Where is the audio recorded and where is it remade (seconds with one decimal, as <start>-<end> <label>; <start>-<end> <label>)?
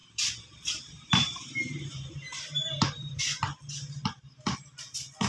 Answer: 0.0-3.2 remade; 3.2-5.3 recorded